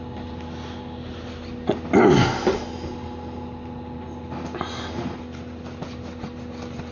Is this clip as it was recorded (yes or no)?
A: yes